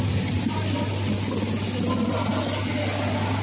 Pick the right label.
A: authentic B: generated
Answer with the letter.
A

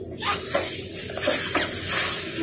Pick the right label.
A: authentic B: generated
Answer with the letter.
A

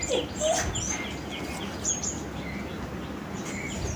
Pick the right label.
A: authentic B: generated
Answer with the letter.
A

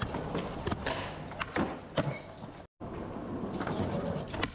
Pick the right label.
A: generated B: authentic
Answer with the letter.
B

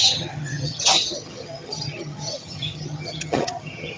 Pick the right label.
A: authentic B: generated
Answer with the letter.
B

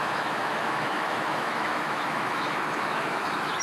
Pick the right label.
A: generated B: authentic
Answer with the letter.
A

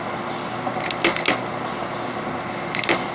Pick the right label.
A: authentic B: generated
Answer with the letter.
A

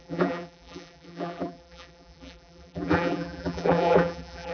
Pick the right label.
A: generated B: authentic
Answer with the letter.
A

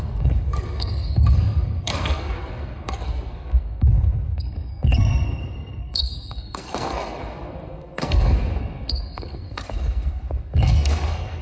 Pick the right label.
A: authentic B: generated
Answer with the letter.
B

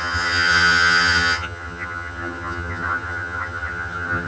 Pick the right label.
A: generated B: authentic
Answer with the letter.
A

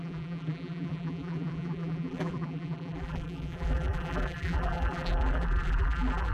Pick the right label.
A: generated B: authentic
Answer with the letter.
A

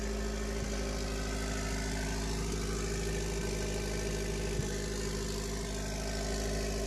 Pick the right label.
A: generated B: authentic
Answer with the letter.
B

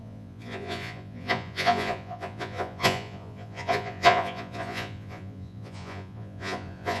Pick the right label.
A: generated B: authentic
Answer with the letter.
A